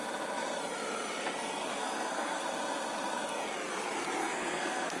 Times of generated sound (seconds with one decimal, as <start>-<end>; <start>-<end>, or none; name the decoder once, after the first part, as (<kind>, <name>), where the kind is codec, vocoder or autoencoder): 1.7-2.4 (codec, SNAC); 4.2-5.0